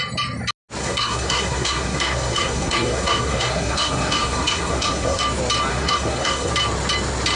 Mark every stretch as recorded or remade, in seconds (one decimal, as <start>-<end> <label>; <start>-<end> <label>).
0.0-0.8 recorded; 0.8-5.2 remade; 5.2-5.7 recorded; 5.7-6.5 remade; 6.5-7.4 recorded